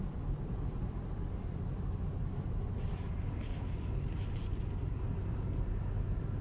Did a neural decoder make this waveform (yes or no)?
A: yes